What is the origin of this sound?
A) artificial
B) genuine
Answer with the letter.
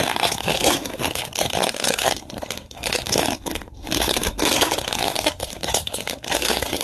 A